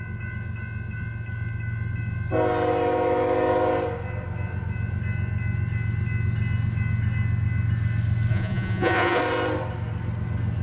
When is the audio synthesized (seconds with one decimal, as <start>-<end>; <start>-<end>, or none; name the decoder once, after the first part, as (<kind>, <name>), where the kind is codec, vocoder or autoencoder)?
8.3-9.2 (vocoder, Vocos)